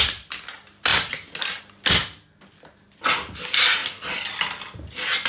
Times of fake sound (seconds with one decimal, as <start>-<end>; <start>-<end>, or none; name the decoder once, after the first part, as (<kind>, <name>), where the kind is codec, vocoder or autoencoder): 0.9-1.6 (vocoder, BigVGAN v2)

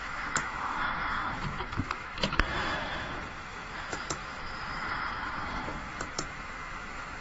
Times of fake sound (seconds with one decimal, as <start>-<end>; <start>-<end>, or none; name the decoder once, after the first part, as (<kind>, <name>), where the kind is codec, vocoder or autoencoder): 0.0-7.2 (autoencoder, DAC-VAE)

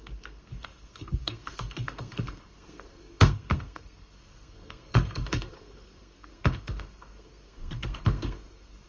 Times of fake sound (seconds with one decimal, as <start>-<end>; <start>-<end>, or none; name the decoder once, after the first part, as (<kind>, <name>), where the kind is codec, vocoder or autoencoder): 0.0-8.9 (codec, SNAC)

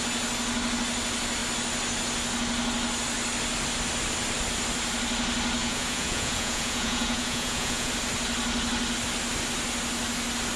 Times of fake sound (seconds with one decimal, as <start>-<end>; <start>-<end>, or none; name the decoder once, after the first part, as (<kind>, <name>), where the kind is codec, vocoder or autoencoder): 5.6-7.9 (vocoder, Vocos)

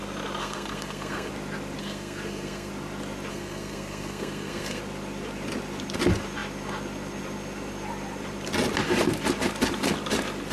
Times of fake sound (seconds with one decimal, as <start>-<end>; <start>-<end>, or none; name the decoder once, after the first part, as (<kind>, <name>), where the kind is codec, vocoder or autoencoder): 0.4-1.3 (codec, SNAC); 1.8-2.7; 3.3-4.8